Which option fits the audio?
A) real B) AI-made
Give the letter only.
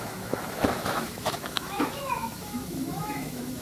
B